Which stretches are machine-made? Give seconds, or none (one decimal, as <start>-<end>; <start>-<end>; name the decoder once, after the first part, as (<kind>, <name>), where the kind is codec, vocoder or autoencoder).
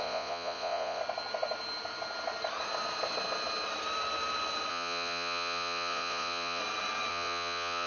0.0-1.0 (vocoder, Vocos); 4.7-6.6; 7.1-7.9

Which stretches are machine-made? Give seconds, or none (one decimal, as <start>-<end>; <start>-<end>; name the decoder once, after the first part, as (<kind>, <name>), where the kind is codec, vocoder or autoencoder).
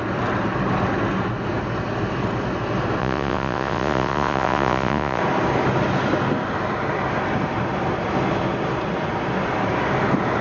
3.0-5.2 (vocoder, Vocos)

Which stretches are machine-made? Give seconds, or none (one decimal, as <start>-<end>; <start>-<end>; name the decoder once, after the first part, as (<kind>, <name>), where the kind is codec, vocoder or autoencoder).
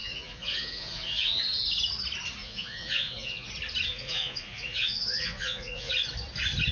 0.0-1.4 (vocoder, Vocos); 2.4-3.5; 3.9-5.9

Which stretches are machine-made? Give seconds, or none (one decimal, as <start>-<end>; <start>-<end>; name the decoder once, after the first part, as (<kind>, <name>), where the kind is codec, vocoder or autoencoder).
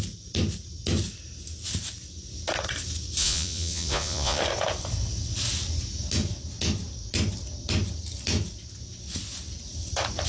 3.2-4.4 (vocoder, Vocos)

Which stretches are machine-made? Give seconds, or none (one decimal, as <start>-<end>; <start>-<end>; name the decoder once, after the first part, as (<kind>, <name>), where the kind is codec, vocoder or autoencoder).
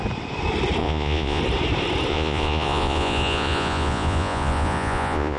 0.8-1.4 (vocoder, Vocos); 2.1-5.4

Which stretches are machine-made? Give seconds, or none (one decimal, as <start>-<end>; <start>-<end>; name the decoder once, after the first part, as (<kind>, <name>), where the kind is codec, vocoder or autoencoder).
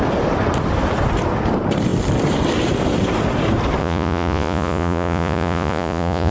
3.8-6.3 (vocoder, Vocos)